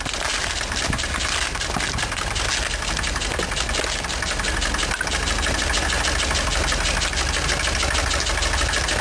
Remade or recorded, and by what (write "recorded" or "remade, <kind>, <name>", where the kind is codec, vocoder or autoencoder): recorded